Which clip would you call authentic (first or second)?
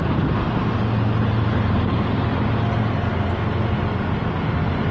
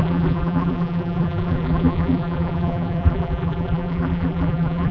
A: first